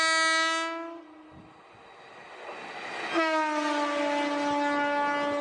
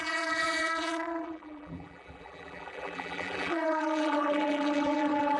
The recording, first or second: first